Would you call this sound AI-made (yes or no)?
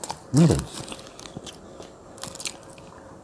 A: no